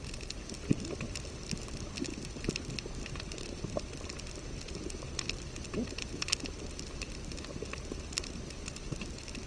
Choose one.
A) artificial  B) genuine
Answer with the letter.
B